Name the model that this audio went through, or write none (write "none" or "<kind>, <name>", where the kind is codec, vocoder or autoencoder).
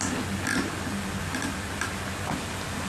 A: none